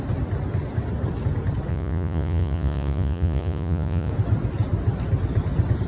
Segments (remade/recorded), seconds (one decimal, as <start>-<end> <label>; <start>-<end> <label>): 0.0-1.7 recorded; 1.7-4.1 remade; 4.1-5.9 recorded